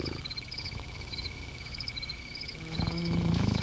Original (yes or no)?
no